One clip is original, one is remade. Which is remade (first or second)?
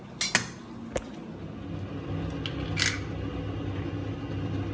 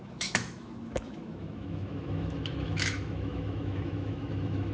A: second